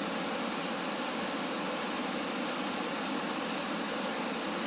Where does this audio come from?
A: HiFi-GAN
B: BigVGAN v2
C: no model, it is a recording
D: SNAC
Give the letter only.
C